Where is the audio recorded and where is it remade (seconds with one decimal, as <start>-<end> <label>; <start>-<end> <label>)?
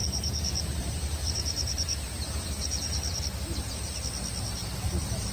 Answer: 0.0-3.2 remade; 3.2-4.6 recorded; 4.6-5.3 remade